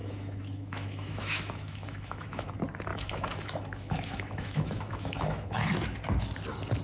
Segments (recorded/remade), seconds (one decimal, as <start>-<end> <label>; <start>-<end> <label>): 0.0-2.5 remade; 2.5-2.9 recorded; 2.9-5.6 remade; 5.6-6.8 recorded